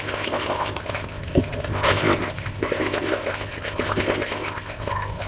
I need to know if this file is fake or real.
fake